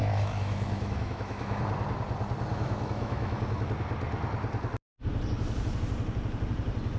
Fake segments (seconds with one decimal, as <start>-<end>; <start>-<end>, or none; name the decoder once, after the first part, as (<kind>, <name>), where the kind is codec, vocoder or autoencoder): 0.0-1.6 (autoencoder, DAC-VAE); 2.5-3.4

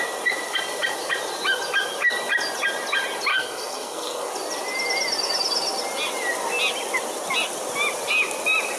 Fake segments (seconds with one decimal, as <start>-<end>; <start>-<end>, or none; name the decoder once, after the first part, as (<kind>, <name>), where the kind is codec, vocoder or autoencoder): 3.3-4.3 (codec, SNAC)

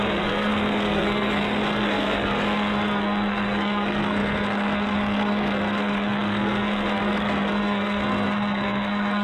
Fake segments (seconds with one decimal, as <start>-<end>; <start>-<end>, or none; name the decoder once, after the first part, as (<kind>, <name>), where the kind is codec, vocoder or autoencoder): 0.0-9.2 (codec, SNAC)